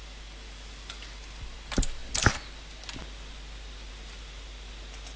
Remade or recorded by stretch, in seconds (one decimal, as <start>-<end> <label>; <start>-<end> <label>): 0.0-5.2 recorded